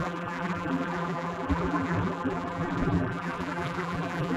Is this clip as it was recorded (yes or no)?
no